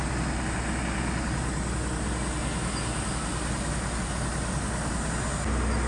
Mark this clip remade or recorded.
recorded